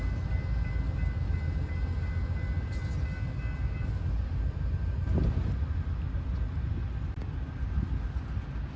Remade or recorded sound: recorded